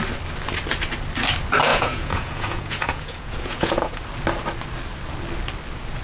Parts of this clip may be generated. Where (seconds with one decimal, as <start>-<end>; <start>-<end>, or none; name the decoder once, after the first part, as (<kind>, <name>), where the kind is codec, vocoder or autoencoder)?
1.7-4.0 (vocoder, Vocos)